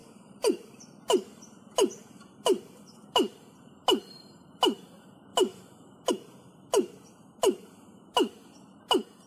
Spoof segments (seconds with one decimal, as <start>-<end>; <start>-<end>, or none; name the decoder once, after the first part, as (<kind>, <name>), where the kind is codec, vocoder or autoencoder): 0.0-0.7 (vocoder, BigVGAN v2)